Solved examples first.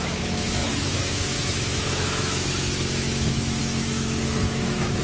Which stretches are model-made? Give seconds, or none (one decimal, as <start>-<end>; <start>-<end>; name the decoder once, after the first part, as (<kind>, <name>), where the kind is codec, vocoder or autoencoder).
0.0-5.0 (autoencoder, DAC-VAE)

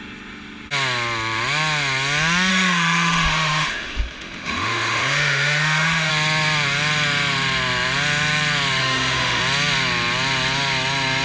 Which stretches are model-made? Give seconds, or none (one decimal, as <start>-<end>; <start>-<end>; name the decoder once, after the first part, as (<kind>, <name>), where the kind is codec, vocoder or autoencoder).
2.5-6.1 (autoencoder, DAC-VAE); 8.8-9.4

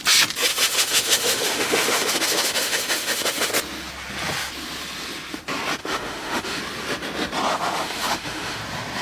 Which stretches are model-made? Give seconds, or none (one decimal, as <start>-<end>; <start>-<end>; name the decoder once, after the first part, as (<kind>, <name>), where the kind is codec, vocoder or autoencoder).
0.5-3.5 (autoencoder, DAC-VAE); 5.8-6.6; 7.5-8.6

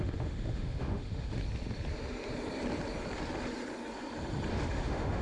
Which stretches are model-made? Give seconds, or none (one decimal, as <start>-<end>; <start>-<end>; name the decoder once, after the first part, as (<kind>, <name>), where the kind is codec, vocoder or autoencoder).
0.0-1.4 (autoencoder, DAC-VAE); 4.5-5.2

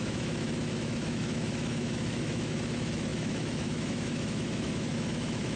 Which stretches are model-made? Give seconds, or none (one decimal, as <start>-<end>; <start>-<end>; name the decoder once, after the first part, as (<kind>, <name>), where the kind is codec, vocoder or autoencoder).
0.0-5.6 (autoencoder, DAC-VAE)

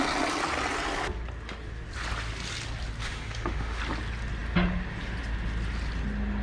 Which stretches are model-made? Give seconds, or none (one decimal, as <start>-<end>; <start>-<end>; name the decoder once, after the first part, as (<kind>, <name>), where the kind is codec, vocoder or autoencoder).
3.0-3.8 (autoencoder, DAC-VAE)

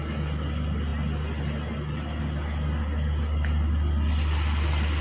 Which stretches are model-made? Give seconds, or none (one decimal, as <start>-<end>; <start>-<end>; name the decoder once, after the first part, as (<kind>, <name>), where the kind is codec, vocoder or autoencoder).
none